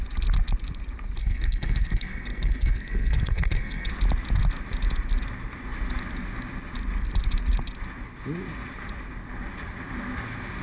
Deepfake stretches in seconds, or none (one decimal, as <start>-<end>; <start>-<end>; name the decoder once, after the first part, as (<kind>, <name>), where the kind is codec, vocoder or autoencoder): 1.2-3.9 (codec, SNAC)